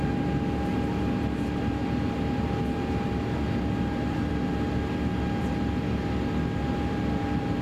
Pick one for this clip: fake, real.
fake